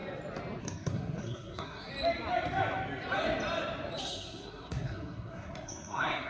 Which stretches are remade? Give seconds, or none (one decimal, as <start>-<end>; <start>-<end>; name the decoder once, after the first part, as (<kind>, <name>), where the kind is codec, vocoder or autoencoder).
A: 0.6-1.9 (codec, SNAC); 4.0-6.3